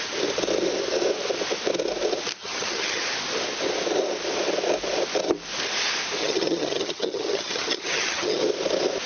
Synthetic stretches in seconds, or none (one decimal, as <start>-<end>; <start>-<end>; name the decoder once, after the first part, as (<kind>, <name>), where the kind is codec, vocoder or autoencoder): 2.4-3.0 (vocoder, HiFi-GAN); 6.2-8.4